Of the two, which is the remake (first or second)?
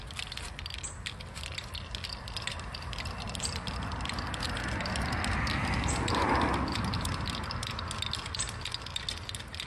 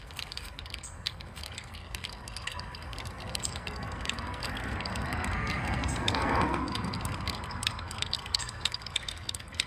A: second